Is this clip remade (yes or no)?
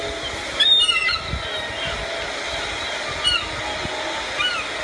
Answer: no